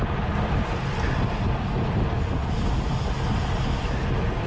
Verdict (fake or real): real